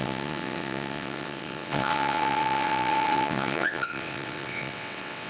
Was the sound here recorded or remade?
remade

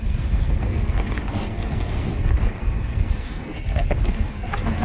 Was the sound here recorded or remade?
remade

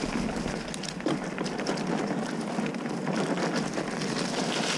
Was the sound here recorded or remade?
recorded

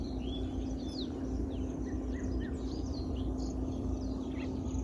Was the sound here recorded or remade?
remade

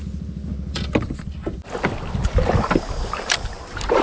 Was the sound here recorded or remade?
recorded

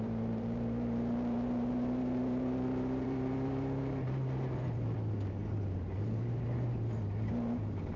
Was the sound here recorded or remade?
remade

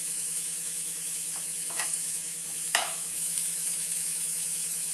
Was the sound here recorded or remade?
remade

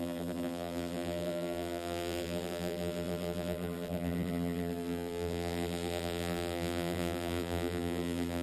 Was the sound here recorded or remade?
remade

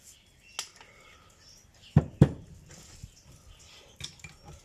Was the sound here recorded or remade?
recorded